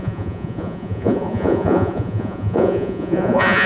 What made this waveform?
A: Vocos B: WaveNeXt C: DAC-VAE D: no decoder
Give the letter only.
A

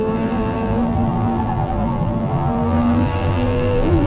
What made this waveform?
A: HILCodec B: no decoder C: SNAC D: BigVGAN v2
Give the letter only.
D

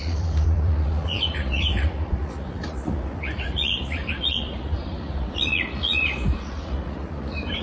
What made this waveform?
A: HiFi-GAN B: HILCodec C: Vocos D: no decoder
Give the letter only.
C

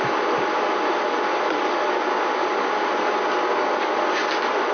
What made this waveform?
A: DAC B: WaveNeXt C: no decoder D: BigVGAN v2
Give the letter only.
C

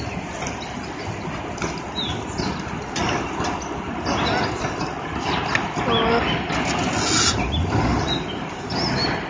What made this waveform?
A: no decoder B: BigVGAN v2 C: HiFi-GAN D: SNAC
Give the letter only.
A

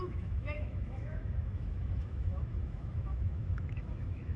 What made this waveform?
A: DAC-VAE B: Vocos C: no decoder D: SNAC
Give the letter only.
A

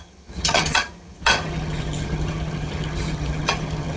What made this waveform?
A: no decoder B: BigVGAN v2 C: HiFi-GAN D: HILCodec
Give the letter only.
C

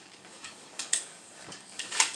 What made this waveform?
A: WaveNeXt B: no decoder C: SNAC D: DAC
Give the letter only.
D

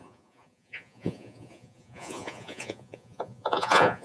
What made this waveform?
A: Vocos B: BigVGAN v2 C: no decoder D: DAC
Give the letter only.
A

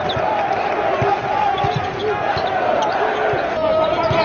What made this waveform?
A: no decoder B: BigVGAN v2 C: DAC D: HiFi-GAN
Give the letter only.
A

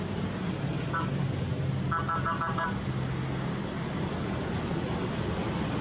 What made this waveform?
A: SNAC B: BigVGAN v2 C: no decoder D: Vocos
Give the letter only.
C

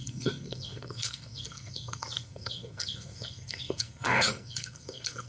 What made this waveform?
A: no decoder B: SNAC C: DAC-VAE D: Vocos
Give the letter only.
B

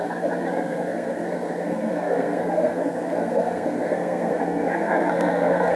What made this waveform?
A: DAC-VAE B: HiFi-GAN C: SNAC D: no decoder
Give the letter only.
C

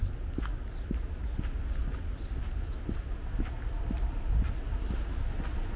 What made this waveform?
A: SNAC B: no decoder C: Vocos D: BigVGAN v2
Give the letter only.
B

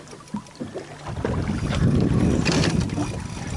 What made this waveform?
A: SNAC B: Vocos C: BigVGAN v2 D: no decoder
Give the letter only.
D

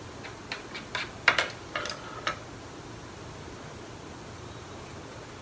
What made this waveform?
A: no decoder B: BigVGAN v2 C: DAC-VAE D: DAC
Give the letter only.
A